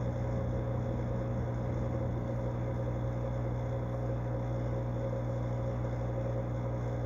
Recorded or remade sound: recorded